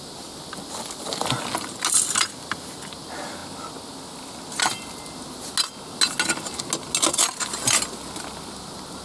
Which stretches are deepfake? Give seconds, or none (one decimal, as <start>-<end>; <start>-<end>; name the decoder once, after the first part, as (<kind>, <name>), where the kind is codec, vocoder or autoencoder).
none